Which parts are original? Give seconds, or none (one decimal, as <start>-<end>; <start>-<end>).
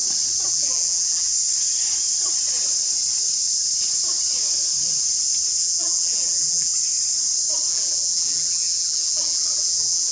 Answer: 0.0-0.5; 1.3-5.5; 6.7-7.7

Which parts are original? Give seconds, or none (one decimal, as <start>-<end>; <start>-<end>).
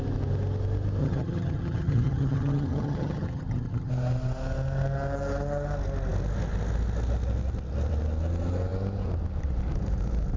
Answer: 0.0-1.0; 3.9-10.4